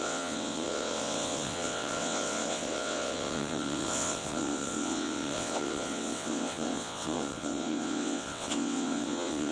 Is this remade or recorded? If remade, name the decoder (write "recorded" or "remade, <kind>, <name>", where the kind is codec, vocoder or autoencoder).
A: remade, vocoder, WaveNeXt